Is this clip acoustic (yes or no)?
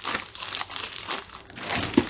yes